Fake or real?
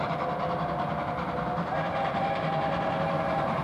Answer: real